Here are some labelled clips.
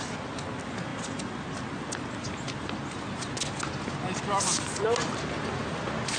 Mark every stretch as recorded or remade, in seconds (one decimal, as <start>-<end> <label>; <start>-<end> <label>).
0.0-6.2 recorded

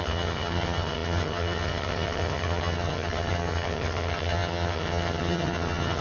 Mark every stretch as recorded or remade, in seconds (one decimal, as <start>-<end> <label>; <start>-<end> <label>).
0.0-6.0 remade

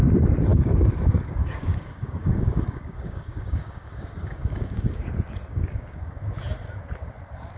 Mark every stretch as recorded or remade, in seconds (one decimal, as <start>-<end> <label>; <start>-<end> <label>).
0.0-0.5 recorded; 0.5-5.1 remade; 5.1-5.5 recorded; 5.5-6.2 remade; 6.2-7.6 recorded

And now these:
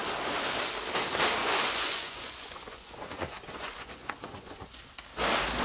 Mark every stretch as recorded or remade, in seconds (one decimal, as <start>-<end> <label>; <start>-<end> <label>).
0.0-1.4 recorded; 1.4-4.8 remade; 4.8-5.6 recorded

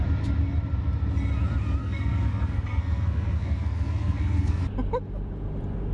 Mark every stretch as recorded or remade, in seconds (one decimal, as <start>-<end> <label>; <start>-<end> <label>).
0.0-1.8 recorded; 1.8-4.6 remade; 4.6-5.9 recorded

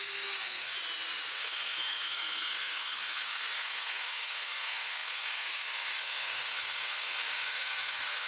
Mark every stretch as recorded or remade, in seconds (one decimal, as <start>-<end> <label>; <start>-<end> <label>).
0.0-0.7 remade; 0.7-1.3 recorded; 1.3-8.3 remade

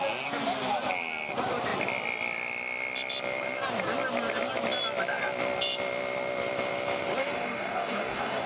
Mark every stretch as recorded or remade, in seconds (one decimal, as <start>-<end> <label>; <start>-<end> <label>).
0.0-7.2 recorded; 7.2-8.5 remade